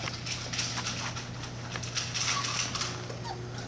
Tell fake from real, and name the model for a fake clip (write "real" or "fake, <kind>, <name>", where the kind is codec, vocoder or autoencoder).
real